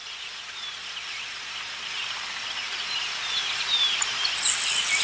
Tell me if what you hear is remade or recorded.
recorded